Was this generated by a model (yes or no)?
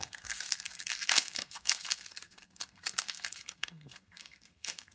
yes